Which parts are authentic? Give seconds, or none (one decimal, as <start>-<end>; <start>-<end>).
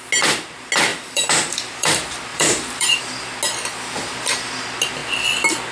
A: 0.0-0.9; 1.9-2.3; 3.0-5.7